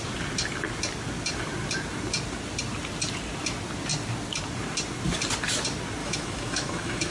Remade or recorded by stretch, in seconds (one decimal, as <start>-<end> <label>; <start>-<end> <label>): 0.0-6.0 recorded; 6.0-7.1 remade

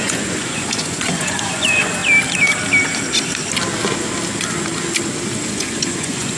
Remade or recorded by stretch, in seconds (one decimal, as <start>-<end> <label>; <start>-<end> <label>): 0.0-2.0 remade; 2.0-5.5 recorded; 5.5-6.4 remade

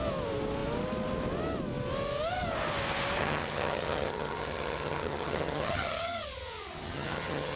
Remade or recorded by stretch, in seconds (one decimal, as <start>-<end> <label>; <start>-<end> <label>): 0.0-3.2 recorded; 3.2-7.6 remade